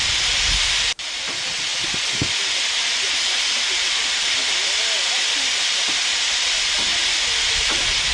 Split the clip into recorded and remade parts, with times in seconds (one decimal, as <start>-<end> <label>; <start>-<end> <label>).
0.0-8.1 recorded